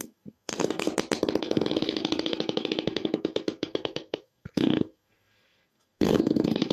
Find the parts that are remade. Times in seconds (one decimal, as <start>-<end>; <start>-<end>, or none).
0.0-0.9; 1.4-6.7